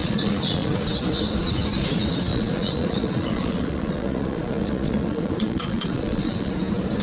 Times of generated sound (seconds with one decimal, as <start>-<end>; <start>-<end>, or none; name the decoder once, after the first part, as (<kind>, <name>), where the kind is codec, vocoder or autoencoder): 0.0-0.7 (vocoder, Vocos); 2.3-6.5